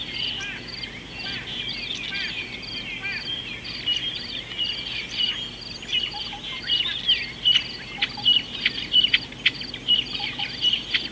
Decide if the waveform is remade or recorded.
recorded